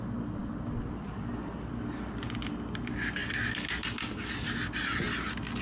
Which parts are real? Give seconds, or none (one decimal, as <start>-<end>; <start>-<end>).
0.0-5.6